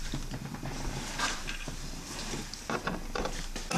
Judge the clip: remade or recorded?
remade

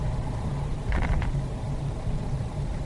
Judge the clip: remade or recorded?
recorded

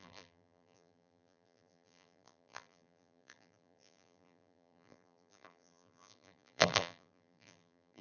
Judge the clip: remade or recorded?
remade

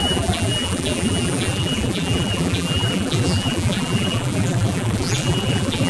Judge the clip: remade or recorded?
remade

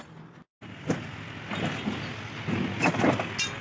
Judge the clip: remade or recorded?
recorded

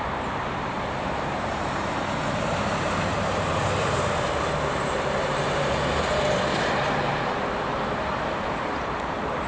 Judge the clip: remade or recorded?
remade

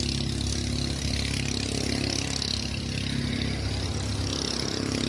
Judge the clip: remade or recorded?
recorded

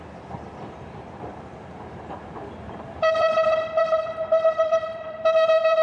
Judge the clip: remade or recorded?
remade